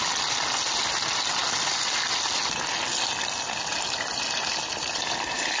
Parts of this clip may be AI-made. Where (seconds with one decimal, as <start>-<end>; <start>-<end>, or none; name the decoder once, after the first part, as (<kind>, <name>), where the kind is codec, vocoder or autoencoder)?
none